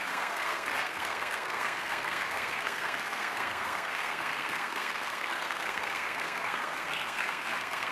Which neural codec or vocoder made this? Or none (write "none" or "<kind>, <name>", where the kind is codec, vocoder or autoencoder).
codec, SNAC